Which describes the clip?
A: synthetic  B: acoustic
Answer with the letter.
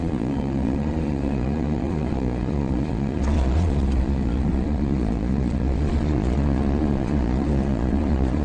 A